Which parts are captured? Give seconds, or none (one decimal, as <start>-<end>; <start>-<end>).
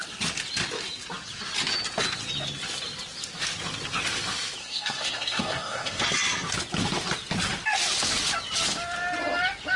0.0-4.6; 6.0-9.8